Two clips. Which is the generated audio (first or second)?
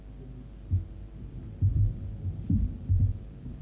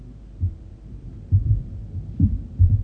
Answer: second